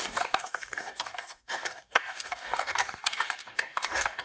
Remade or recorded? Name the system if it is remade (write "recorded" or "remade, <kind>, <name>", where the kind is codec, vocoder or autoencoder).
remade, codec, DAC